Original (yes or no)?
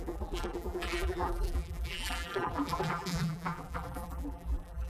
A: no